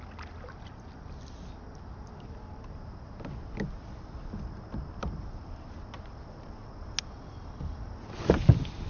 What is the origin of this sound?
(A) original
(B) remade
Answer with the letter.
A